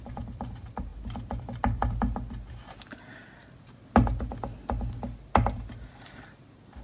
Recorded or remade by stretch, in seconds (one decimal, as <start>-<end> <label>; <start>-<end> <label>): 0.0-0.9 remade; 0.9-1.4 recorded; 1.4-1.8 remade; 1.8-5.9 recorded; 5.9-6.8 remade